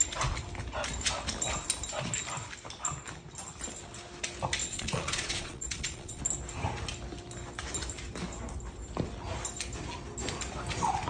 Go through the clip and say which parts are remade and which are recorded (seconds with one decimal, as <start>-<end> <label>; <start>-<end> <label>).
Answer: 0.0-4.6 recorded; 4.6-6.2 remade; 6.2-11.1 recorded